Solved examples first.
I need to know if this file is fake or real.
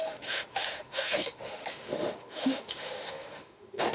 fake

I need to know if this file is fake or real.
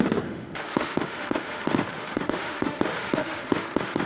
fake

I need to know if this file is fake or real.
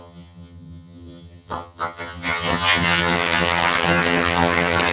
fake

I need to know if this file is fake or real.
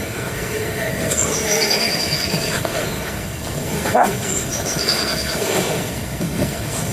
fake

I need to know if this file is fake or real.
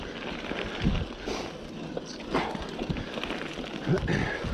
real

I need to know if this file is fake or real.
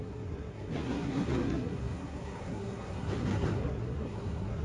fake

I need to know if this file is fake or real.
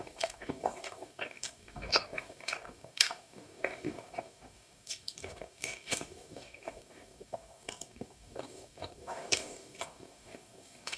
fake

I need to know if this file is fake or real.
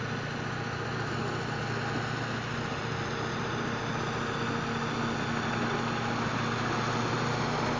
real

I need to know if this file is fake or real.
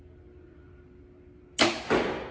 real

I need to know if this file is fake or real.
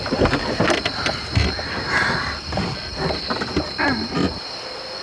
real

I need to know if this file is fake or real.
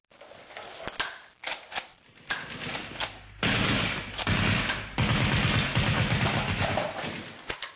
real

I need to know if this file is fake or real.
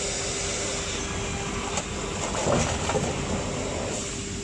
real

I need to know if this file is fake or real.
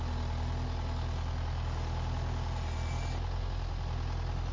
real